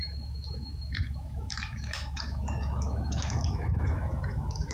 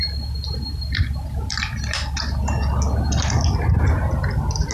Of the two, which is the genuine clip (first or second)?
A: second